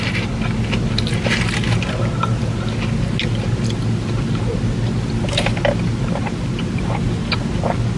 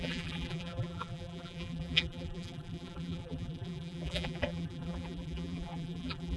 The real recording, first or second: first